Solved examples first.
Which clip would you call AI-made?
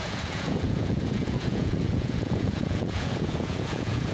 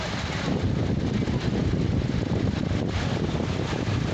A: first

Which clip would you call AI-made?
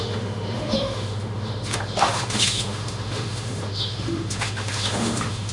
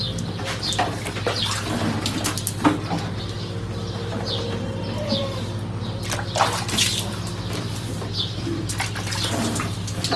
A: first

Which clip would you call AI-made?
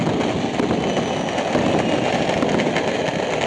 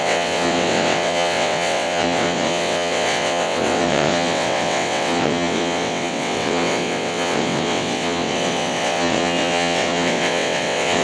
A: second